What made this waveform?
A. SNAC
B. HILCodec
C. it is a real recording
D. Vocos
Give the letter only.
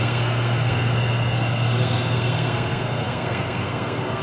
A